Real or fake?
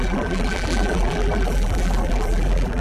fake